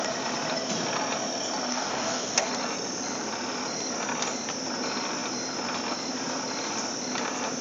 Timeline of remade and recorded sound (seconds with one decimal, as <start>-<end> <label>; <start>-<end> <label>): 0.0-1.7 recorded; 1.7-2.5 remade; 2.5-7.6 recorded

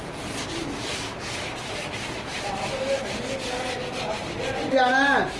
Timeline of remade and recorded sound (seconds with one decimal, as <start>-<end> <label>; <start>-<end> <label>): 0.0-5.4 recorded

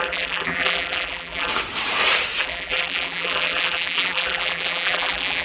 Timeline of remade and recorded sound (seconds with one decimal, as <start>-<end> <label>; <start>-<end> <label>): 0.0-1.5 remade; 1.5-2.4 recorded; 2.4-5.4 remade

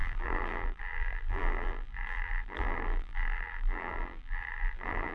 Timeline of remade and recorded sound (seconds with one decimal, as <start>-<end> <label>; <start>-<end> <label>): 0.0-5.1 remade

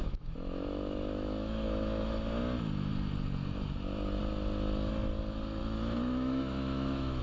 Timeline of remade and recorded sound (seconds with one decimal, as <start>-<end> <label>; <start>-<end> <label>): 0.0-2.4 remade; 2.4-5.6 recorded; 5.6-7.2 remade